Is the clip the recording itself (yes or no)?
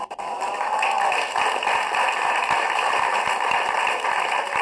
yes